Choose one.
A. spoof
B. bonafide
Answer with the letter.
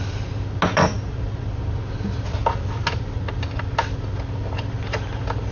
B